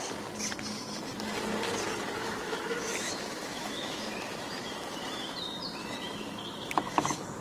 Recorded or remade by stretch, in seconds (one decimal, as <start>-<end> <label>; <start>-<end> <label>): 0.0-2.2 recorded; 2.2-5.3 remade; 5.3-5.8 recorded; 5.8-7.4 remade